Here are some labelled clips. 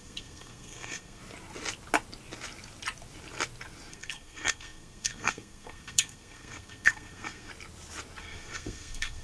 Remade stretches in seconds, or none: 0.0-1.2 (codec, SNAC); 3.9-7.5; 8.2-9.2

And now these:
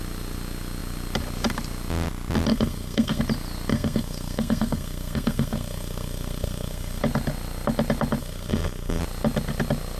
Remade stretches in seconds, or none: 2.5-3.2 (codec, SNAC); 3.7-7.0; 8.2-9.0

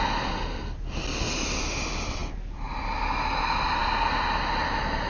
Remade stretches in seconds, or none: none

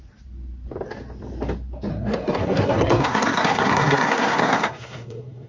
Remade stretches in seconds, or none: 1.9-5.5 (codec, SNAC)

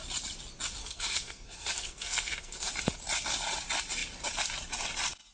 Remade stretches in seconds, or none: 0.8-2.7 (codec, SNAC)

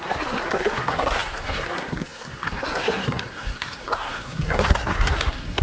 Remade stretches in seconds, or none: 0.0-5.6 (codec, SNAC)

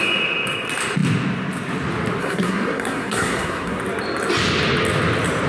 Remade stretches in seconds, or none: 2.2-3.8 (codec, SNAC)